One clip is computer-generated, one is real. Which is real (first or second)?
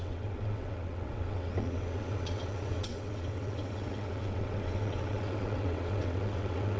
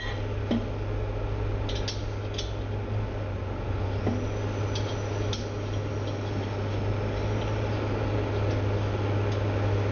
second